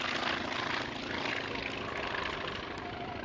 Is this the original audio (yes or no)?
yes